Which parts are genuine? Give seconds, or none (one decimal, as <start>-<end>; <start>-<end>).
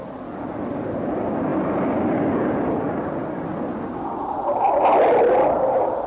0.0-6.1